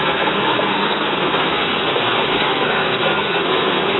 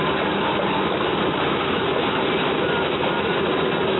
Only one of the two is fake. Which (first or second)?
first